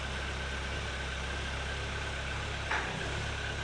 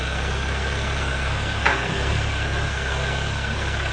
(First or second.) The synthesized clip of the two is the second